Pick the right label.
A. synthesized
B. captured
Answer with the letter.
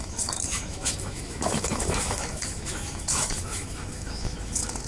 A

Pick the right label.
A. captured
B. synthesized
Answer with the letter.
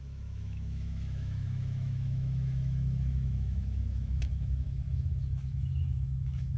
B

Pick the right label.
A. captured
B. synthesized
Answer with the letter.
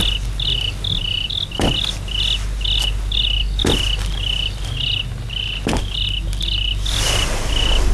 A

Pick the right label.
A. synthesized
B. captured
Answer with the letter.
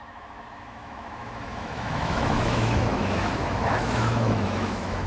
A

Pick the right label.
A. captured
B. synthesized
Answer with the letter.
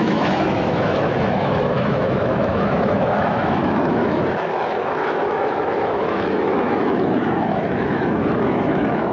B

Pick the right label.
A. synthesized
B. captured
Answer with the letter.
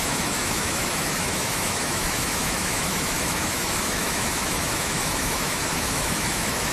A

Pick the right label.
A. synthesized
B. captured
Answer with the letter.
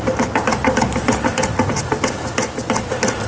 B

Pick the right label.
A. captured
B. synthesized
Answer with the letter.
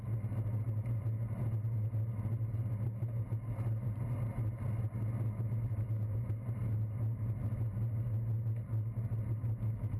A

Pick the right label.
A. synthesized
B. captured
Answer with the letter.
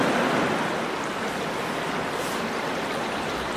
B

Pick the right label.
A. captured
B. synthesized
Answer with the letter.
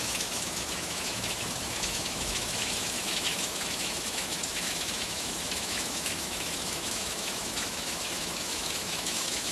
B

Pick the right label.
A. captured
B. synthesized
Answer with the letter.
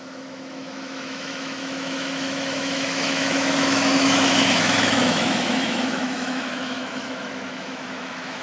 B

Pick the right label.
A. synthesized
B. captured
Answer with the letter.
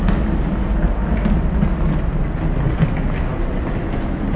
B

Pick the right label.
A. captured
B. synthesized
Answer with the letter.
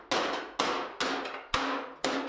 A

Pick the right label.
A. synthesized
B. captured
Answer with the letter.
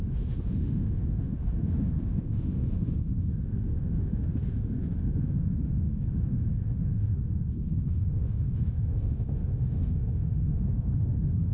A